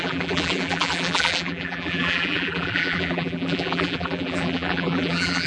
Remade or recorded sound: remade